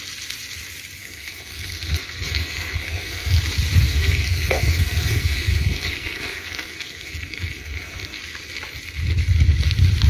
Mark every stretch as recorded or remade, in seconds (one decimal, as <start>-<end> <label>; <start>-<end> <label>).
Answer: 0.0-1.0 recorded; 1.0-3.4 remade; 3.4-3.9 recorded; 3.9-8.2 remade; 8.2-10.1 recorded